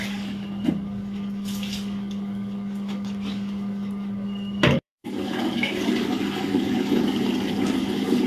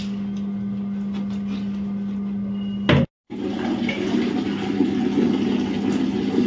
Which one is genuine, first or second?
second